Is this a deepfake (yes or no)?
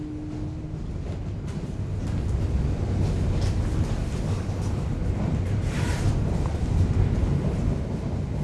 no